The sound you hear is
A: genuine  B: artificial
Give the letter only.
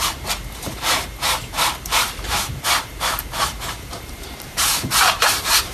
B